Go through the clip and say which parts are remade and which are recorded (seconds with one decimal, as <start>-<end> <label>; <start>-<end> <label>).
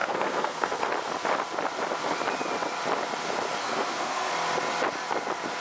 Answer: 0.0-0.9 remade; 0.9-3.6 recorded; 3.6-4.3 remade; 4.3-5.6 recorded